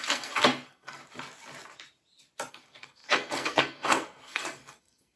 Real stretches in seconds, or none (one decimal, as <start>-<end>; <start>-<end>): 1.0-2.5